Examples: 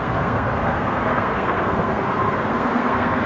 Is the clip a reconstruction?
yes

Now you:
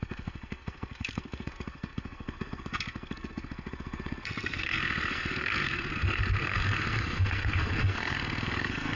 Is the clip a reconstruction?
yes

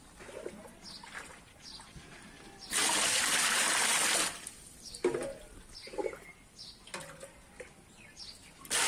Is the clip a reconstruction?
no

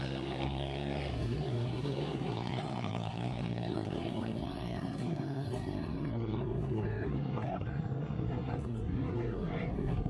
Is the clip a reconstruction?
yes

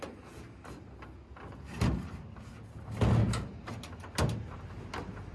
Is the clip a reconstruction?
no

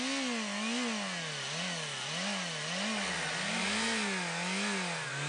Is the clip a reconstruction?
no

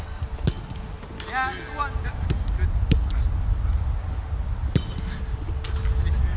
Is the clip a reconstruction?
no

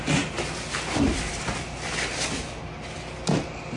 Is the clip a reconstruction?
no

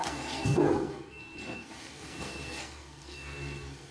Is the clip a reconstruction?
yes